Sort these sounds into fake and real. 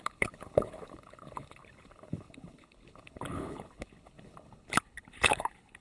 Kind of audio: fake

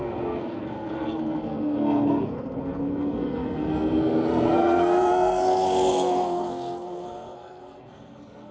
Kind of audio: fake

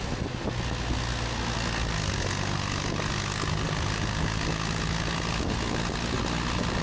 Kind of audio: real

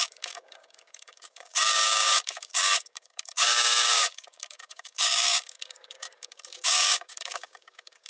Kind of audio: fake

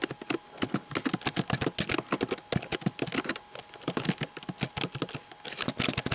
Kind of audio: real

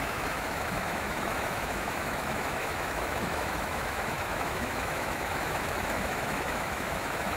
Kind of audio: fake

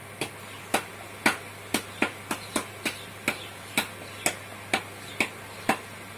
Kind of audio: real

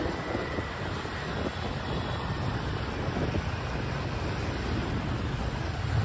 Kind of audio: real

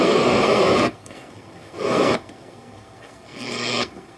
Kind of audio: fake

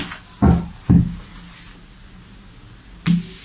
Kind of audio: real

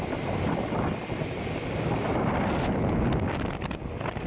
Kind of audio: real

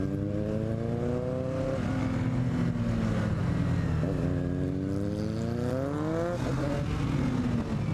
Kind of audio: real